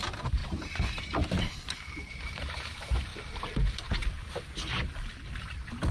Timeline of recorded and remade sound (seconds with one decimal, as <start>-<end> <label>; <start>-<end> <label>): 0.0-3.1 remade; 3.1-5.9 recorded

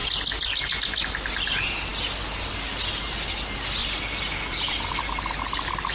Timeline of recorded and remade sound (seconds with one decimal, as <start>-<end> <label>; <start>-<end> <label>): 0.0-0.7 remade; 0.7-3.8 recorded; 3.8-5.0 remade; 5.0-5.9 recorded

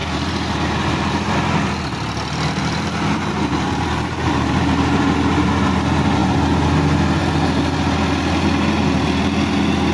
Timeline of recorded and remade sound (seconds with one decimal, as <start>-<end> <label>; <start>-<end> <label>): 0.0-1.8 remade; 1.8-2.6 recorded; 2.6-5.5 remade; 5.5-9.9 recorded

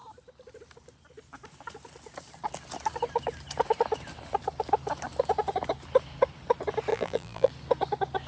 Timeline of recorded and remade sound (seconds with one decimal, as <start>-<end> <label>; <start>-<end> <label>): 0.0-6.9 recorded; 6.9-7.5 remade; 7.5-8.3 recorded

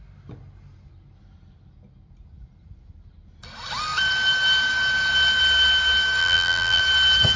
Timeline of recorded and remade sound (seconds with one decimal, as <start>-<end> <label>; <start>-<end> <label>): 0.0-6.2 recorded; 6.2-6.8 remade; 6.8-7.4 recorded

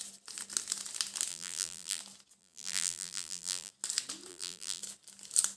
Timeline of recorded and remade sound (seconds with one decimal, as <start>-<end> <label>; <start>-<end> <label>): 0.0-1.3 recorded; 1.3-2.0 remade; 2.0-2.4 recorded; 2.4-3.7 remade; 3.7-4.3 recorded; 4.3-4.8 remade; 4.8-5.6 recorded

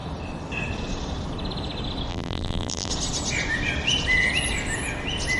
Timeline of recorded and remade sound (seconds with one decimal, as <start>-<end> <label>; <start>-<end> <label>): 0.0-2.1 recorded; 2.1-2.9 remade; 2.9-5.4 recorded

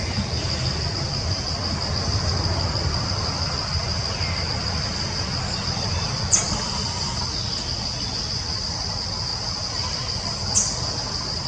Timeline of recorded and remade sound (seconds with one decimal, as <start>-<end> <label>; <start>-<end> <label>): 0.0-11.5 recorded